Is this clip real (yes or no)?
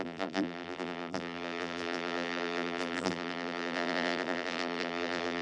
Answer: no